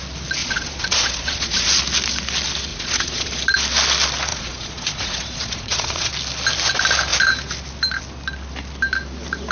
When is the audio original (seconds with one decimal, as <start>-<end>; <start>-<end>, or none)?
0.0-0.4; 1.7-2.7; 3.3-4.3; 6.1-9.5